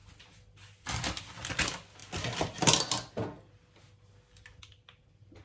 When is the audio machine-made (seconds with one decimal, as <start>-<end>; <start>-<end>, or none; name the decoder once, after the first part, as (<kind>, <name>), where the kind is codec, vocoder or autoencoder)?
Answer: none

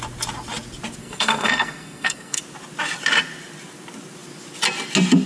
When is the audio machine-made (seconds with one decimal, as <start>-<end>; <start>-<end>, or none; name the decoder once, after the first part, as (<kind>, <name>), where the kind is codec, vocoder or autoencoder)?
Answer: 1.0-2.4 (codec, SNAC)

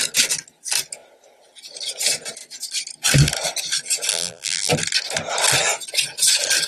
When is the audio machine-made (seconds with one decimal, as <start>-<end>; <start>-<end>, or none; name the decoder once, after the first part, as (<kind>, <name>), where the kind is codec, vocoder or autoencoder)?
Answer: 4.1-4.7 (vocoder, BigVGAN v2)

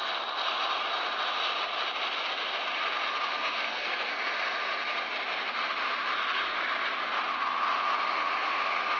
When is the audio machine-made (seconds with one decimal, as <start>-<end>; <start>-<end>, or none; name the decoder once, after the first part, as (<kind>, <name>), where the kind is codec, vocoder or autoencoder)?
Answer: 3.4-4.3 (codec, SNAC)

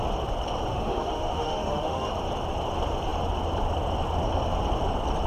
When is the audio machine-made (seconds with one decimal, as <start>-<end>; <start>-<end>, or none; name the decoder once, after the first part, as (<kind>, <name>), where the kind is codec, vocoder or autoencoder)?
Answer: 0.7-2.1 (autoencoder, DAC-VAE)

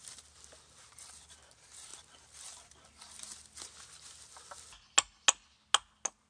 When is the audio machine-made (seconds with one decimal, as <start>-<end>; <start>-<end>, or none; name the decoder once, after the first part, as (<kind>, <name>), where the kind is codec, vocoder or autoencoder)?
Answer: none

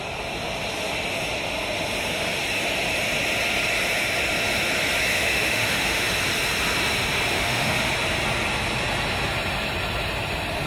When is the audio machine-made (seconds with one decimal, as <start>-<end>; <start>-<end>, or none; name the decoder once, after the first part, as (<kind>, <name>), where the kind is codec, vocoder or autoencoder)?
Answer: 5.1-6.1 (autoencoder, DAC-VAE); 7.3-7.9

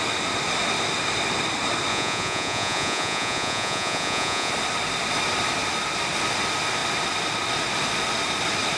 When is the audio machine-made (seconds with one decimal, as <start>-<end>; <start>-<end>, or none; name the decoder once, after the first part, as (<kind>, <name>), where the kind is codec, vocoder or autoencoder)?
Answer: 1.9-4.5 (vocoder, Vocos)